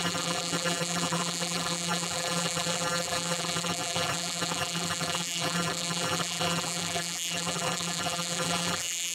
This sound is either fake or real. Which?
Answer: fake